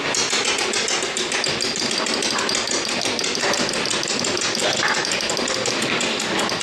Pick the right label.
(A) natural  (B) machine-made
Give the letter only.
A